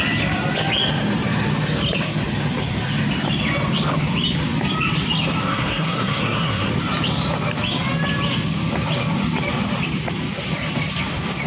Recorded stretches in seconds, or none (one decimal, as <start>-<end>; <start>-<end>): 0.0-5.5; 6.7-11.5